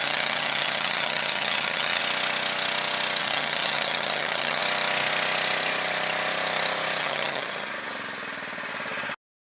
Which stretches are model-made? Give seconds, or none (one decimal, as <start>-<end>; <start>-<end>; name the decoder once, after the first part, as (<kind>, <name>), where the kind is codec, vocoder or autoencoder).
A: 0.0-2.0 (vocoder, HiFi-GAN); 3.2-4.6; 7.0-7.7